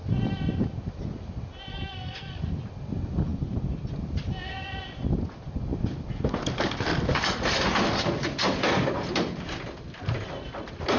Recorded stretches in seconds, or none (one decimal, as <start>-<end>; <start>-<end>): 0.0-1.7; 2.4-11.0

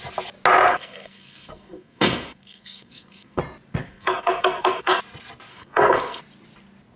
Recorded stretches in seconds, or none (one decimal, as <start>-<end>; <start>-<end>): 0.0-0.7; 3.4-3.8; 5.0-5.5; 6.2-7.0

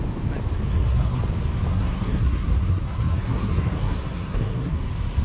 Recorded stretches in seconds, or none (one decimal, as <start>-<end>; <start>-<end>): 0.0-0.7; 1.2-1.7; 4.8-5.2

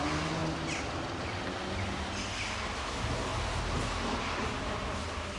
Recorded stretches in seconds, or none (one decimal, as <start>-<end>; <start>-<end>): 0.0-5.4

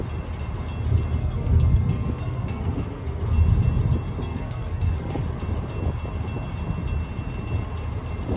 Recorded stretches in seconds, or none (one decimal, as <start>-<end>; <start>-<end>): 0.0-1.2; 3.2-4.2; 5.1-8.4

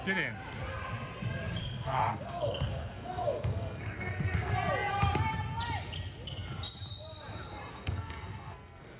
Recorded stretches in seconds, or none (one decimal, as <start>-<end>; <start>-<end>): 0.0-1.6; 4.5-7.7

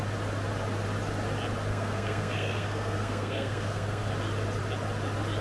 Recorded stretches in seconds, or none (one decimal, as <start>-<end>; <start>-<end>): 0.0-1.7; 4.1-5.4